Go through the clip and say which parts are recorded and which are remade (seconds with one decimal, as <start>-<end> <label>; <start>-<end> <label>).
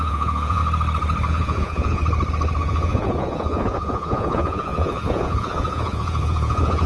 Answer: 0.0-0.6 remade; 0.6-1.3 recorded; 1.3-2.0 remade; 2.0-2.6 recorded; 2.6-6.9 remade